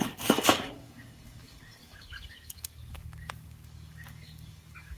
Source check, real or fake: fake